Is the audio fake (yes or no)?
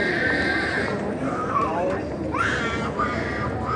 yes